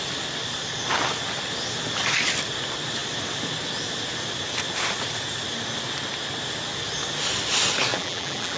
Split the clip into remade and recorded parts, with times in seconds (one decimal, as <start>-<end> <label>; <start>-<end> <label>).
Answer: 0.0-7.9 recorded; 7.9-8.6 remade